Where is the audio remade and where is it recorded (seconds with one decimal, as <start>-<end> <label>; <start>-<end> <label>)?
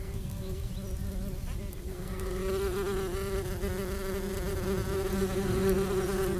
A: 0.0-0.7 remade; 0.7-1.7 recorded; 1.7-2.4 remade; 2.4-6.4 recorded